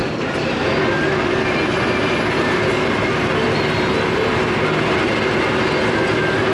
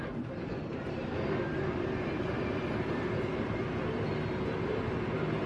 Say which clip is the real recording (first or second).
first